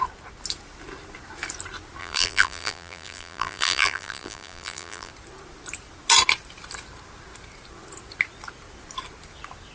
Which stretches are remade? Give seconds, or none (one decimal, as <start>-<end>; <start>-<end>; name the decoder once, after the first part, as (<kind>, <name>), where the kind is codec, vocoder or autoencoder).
2.0-5.1 (vocoder, BigVGAN v2)